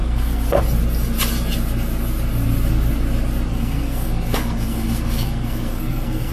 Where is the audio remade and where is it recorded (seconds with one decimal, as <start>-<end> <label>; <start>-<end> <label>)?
0.0-0.6 remade; 0.6-3.5 recorded; 3.5-6.3 remade